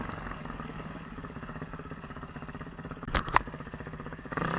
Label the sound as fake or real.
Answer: fake